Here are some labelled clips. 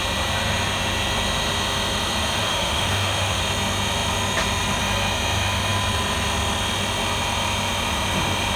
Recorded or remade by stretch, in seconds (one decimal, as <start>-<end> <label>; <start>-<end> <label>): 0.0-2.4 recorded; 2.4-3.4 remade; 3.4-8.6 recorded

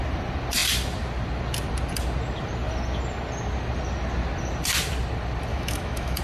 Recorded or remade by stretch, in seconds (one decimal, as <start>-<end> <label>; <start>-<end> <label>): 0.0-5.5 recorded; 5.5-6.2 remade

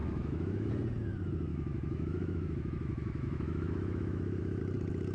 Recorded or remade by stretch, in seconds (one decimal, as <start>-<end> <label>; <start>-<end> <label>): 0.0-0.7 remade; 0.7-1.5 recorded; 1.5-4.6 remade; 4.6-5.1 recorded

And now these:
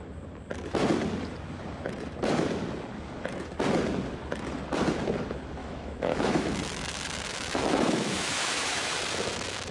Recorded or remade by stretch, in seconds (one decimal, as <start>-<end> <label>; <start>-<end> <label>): 0.0-5.6 recorded; 5.6-9.0 remade; 9.0-9.7 recorded

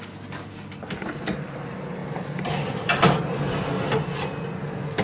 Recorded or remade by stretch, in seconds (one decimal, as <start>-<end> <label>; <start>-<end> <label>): 0.0-5.0 recorded